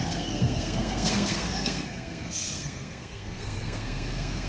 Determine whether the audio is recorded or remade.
remade